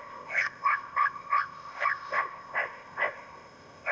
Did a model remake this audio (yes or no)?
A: yes